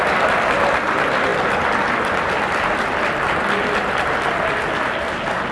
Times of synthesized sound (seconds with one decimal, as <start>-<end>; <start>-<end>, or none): 1.3-3.9